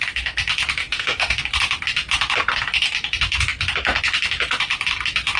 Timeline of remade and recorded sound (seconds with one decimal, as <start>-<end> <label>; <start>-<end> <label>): 0.0-0.8 recorded; 0.8-1.4 remade; 1.4-5.4 recorded